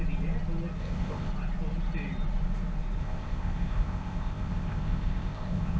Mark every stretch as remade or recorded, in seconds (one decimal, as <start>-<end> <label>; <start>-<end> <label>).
0.0-0.8 recorded; 0.8-1.3 remade; 1.3-3.0 recorded; 3.0-5.8 remade